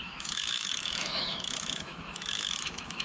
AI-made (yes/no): yes